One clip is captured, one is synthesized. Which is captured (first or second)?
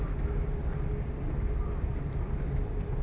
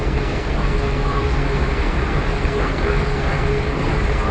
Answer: first